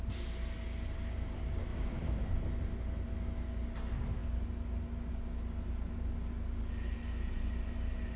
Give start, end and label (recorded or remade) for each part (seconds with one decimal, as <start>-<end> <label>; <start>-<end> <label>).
0.0-1.7 recorded; 1.7-2.3 remade; 2.3-8.2 recorded

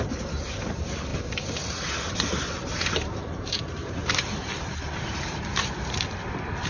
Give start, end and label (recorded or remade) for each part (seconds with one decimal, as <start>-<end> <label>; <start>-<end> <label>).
0.0-1.1 remade; 1.1-2.1 recorded; 2.1-6.7 remade

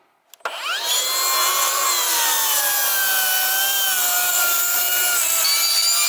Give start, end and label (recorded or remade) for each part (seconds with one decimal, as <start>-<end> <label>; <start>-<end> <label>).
0.0-4.3 recorded; 4.3-4.9 remade; 4.9-6.1 recorded

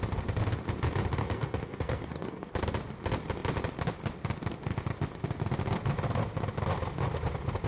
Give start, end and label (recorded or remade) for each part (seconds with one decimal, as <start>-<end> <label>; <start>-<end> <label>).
0.0-1.2 recorded; 1.2-2.5 remade; 2.5-7.7 recorded